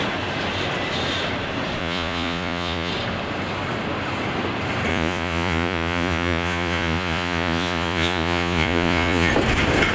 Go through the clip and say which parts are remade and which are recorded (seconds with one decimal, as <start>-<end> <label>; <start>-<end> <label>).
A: 0.0-1.8 recorded; 1.8-2.9 remade; 2.9-4.9 recorded; 4.9-9.3 remade; 9.3-9.9 recorded